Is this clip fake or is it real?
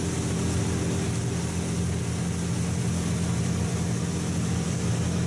real